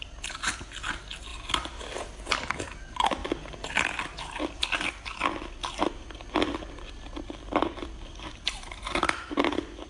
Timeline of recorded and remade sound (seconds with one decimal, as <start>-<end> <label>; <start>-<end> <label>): 0.0-9.9 recorded